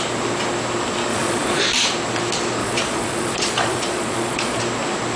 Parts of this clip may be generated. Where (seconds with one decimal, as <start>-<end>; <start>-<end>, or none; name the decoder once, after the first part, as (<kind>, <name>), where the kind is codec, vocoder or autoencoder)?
1.1-1.6 (vocoder, Vocos); 2.6-4.6